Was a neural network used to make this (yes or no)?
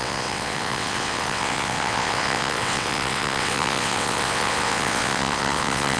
yes